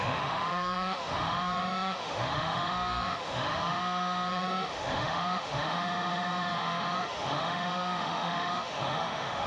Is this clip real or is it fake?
fake